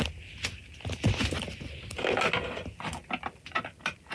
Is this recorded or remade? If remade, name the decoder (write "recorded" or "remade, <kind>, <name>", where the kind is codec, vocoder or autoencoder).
recorded